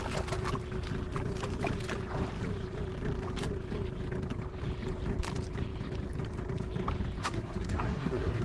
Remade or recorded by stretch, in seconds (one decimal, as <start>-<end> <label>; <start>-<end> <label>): 0.0-7.2 recorded; 7.2-8.4 remade